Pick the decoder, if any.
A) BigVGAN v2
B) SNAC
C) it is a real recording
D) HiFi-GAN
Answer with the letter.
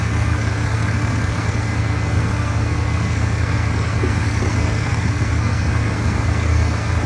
B